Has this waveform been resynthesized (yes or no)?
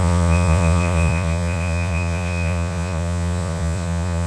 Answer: yes